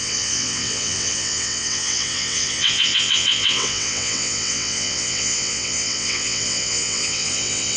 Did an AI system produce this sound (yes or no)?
yes